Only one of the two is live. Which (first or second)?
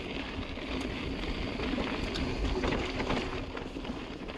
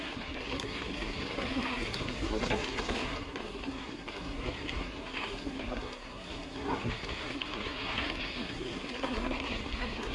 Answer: first